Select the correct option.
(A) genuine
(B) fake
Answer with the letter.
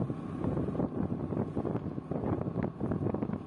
A